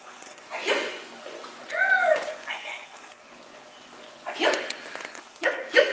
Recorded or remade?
remade